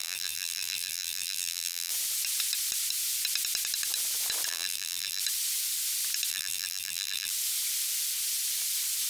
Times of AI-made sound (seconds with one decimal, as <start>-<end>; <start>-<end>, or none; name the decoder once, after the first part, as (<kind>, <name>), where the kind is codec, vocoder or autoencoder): 0.0-1.9 (vocoder, BigVGAN v2); 4.5-5.2; 6.3-7.3